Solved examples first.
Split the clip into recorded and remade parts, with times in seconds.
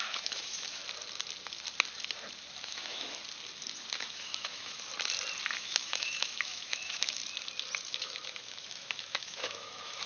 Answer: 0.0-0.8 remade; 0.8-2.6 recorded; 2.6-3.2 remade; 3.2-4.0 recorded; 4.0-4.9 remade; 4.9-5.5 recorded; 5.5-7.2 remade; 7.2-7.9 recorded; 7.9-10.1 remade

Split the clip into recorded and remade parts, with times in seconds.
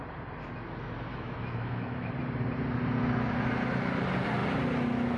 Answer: 0.0-1.1 recorded; 1.1-2.1 remade; 2.1-5.2 recorded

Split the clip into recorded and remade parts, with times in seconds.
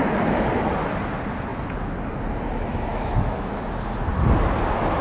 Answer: 0.0-2.9 recorded; 2.9-3.5 remade; 3.5-5.0 recorded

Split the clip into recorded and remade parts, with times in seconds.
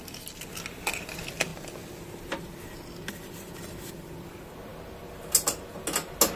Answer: 0.0-6.4 recorded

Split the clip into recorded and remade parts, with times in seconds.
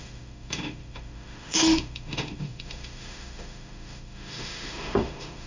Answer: 0.0-5.5 remade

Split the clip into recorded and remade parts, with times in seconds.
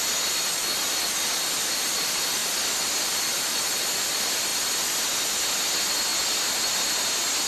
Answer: 0.0-7.5 recorded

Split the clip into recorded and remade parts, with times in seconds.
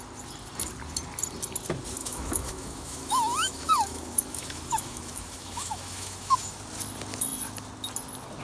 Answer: 0.0-2.0 recorded; 2.0-6.6 remade; 6.6-8.4 recorded